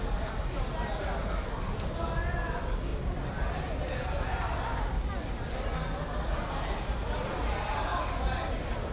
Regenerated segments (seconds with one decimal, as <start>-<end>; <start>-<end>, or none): none